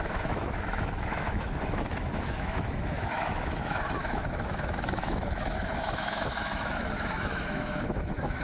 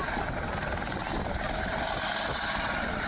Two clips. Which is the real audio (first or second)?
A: second